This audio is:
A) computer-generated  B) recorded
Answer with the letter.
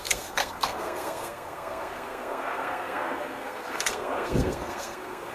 A